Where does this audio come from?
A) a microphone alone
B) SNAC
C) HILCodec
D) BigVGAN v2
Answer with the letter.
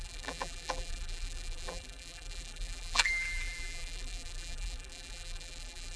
D